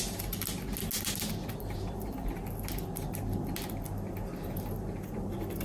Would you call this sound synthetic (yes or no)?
no